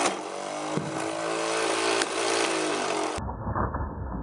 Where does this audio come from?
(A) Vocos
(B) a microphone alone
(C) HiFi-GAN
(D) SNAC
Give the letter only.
B